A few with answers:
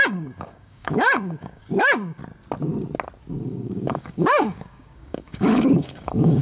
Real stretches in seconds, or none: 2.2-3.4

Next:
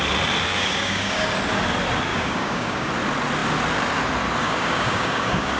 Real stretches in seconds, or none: 0.0-0.5; 1.3-2.1; 2.9-4.4

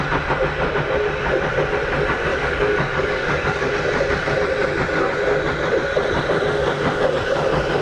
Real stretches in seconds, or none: 0.0-2.3; 3.7-6.6

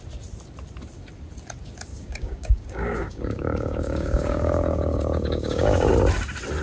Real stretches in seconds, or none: 0.0-1.9; 5.9-6.6

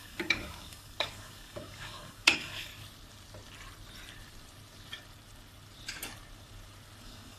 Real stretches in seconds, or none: 2.7-7.0

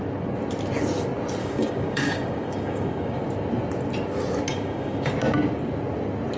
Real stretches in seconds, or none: 0.0-1.4; 3.2-4.5; 5.1-6.4

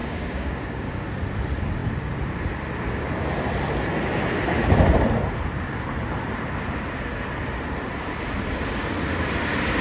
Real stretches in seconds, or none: 1.0-9.8